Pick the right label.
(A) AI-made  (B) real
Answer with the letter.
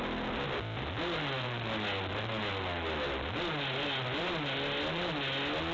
B